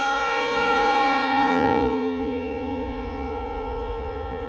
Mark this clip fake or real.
fake